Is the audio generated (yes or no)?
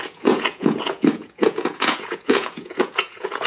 yes